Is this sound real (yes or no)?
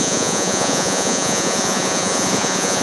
no